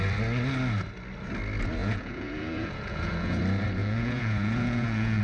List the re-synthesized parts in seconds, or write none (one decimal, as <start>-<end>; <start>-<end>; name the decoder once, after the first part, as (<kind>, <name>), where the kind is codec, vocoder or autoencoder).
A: 1.8-3.4 (vocoder, Vocos); 3.8-5.2